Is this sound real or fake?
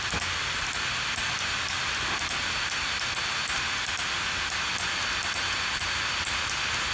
real